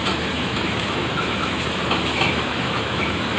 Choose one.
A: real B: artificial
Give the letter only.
B